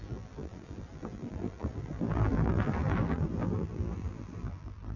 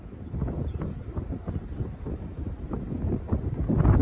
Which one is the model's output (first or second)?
first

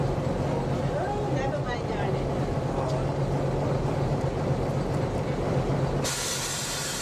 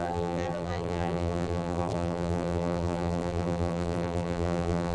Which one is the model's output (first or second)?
second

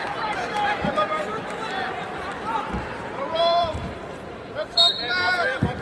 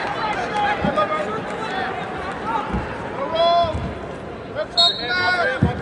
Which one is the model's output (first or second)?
first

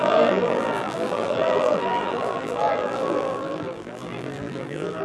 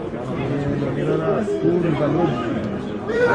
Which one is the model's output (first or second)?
first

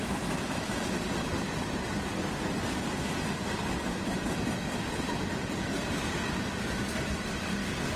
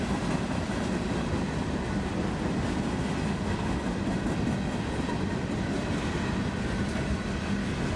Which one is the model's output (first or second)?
first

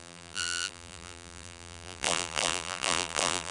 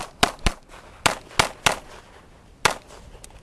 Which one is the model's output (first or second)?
first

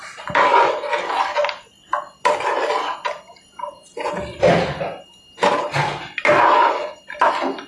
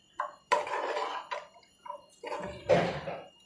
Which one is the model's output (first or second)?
second